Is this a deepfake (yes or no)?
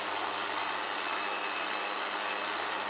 no